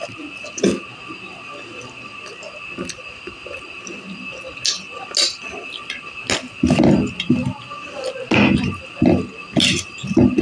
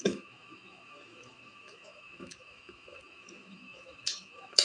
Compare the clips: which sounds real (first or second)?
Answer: first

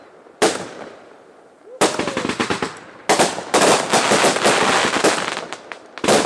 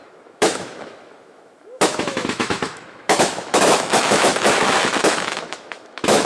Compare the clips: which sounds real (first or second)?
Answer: first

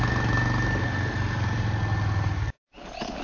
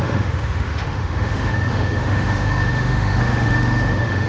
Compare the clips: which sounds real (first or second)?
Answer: first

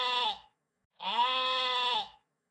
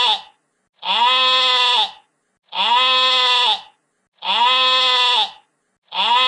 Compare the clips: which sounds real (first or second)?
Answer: second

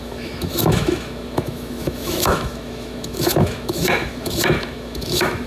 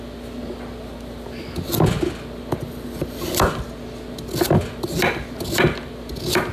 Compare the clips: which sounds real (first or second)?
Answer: second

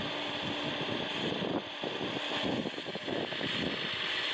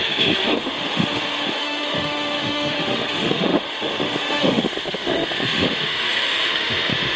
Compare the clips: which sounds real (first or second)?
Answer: first